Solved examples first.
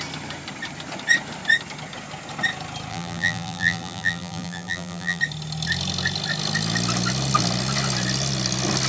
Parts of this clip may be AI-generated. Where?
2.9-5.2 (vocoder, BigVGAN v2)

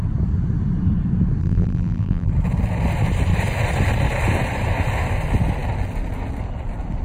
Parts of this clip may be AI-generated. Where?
1.4-2.3 (vocoder, BigVGAN v2)